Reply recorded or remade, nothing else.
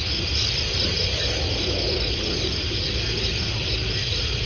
recorded